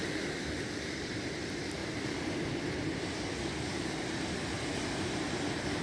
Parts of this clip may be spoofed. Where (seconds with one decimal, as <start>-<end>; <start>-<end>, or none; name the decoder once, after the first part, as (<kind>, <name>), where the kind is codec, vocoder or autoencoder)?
none